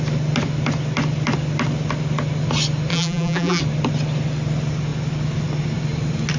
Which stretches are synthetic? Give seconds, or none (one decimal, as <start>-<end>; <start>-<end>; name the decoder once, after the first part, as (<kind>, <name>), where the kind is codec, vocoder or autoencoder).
2.9-3.6 (vocoder, BigVGAN v2)